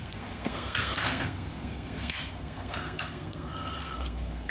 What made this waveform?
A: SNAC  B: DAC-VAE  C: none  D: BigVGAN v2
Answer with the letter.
A